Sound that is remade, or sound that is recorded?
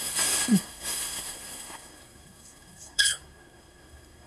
remade